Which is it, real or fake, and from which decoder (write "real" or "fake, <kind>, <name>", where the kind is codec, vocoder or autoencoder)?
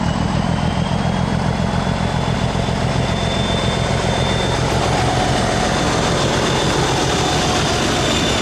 real